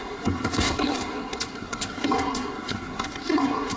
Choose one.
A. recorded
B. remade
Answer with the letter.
B